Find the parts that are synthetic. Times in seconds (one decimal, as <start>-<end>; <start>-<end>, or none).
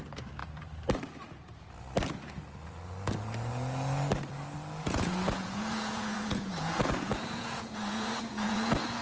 4.8-9.0